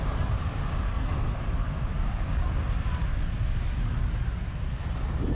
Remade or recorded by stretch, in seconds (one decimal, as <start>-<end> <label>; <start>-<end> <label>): 0.0-0.9 recorded; 0.9-1.4 remade; 1.4-5.3 recorded